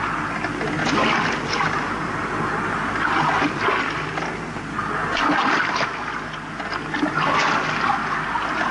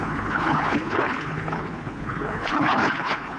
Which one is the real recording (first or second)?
first